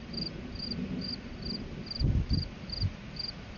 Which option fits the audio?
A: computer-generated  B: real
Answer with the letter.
B